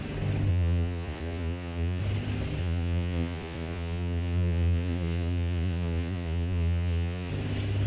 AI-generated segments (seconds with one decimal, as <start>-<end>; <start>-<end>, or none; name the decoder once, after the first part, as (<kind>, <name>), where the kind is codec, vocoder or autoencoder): 0.5-2.0 (vocoder, Vocos); 2.6-7.3